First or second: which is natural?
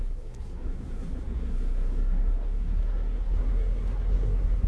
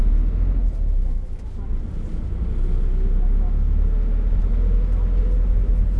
second